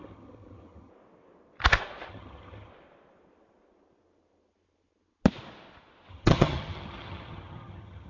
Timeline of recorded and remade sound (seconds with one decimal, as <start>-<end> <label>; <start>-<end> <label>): 0.0-0.9 remade; 0.9-2.1 recorded; 2.1-2.7 remade; 2.7-6.1 recorded; 6.1-8.1 remade

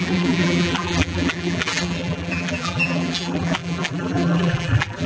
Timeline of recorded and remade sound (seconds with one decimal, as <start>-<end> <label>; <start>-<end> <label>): 0.0-5.1 remade